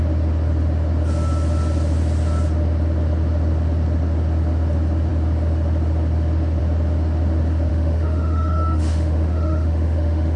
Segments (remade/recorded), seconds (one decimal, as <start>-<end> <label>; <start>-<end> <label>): 0.0-7.7 recorded; 7.7-10.4 remade